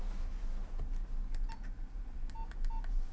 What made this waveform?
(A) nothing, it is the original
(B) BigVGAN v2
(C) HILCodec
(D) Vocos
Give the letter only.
A